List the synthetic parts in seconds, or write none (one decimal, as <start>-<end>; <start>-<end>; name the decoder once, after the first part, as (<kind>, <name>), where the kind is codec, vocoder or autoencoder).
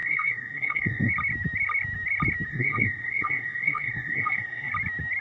0.0-1.1 (codec, SNAC); 2.5-4.7